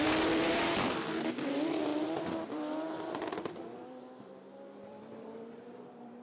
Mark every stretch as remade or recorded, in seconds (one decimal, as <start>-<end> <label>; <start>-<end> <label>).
0.0-1.9 remade; 1.9-2.5 recorded; 2.5-6.2 remade